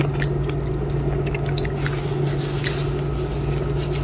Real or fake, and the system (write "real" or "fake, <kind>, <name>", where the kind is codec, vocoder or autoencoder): real